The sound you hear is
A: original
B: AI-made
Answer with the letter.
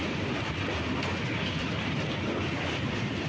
A